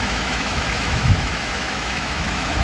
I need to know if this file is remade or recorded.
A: remade